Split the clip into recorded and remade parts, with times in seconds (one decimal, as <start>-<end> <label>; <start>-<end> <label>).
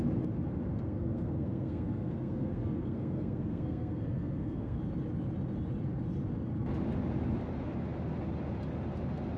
0.0-0.7 recorded; 0.7-4.8 remade; 4.8-9.4 recorded